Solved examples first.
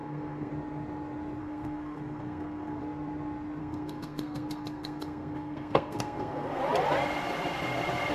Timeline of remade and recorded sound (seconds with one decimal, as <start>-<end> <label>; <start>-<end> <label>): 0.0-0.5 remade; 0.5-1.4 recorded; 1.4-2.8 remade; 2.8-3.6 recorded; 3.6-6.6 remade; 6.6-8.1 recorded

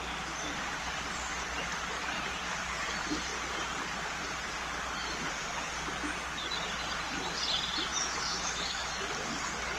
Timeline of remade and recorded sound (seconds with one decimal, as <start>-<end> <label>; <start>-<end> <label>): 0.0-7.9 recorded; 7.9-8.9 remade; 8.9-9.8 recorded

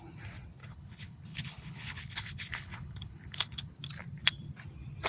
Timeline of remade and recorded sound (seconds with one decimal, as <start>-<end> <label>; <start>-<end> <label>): 0.0-0.6 recorded; 0.6-3.7 remade; 3.7-5.1 recorded

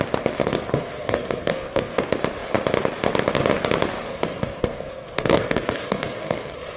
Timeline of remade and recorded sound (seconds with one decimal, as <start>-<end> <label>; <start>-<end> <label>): 0.0-0.4 recorded; 0.4-2.0 remade; 2.0-4.1 recorded; 4.1-6.8 remade